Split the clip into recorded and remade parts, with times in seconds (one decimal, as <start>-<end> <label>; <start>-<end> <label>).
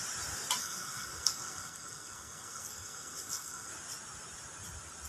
0.0-0.6 recorded; 0.6-3.7 remade; 3.7-5.1 recorded